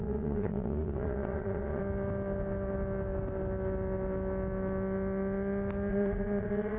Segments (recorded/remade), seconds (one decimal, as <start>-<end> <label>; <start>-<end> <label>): 0.0-1.8 remade; 1.8-5.9 recorded; 5.9-6.8 remade